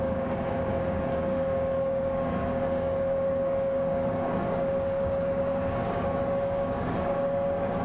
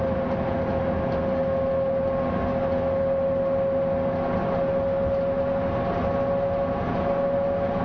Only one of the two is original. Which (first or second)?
second